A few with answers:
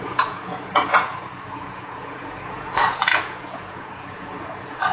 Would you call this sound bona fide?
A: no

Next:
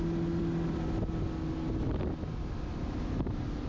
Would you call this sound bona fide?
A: yes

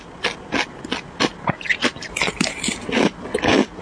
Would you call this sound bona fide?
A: yes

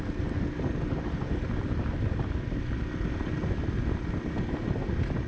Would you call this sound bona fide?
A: yes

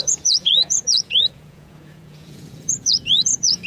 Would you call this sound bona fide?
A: no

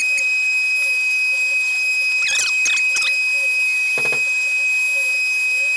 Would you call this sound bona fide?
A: yes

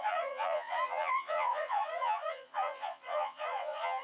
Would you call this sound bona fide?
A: no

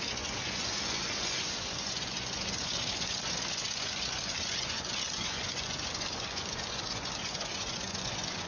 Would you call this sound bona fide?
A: no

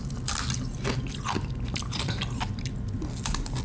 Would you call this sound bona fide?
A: yes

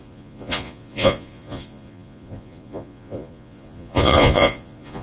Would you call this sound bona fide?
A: no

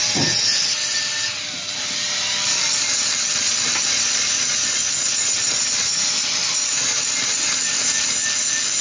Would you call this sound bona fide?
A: yes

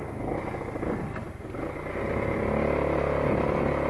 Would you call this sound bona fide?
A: yes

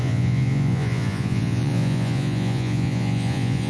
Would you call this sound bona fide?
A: no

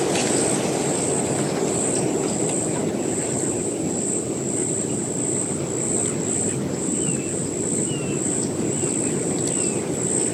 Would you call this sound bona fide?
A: yes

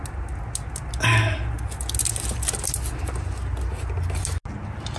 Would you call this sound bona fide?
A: yes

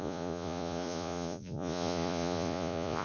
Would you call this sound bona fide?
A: no